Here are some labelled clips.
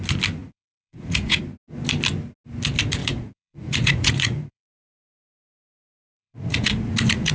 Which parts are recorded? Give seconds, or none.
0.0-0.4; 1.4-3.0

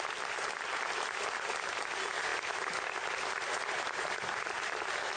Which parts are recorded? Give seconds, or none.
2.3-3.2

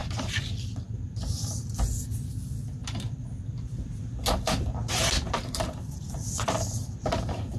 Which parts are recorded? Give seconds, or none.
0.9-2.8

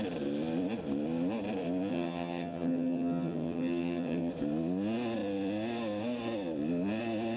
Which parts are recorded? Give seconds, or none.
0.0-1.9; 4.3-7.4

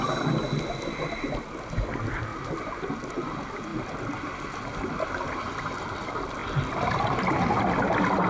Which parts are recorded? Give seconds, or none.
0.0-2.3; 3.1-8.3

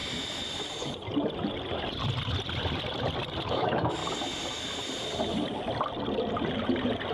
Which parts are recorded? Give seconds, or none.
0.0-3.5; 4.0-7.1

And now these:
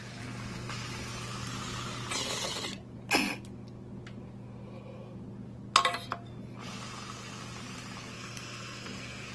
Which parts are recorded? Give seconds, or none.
0.0-8.1